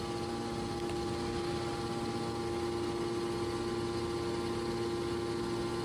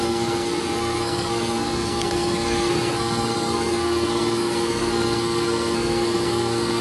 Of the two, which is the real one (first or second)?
first